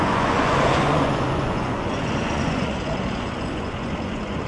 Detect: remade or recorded remade